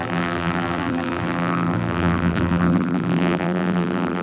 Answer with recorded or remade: remade